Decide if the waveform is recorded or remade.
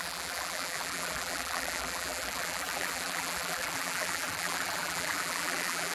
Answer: remade